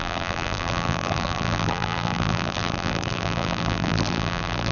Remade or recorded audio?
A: remade